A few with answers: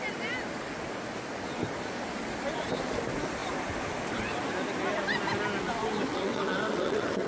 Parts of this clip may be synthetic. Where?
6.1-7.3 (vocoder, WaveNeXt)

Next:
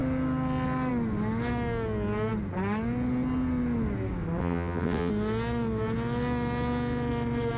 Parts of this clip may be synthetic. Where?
4.4-5.1 (vocoder, WaveNeXt)